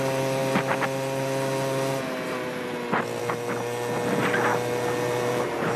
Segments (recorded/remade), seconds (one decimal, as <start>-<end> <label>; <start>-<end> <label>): 0.0-5.8 recorded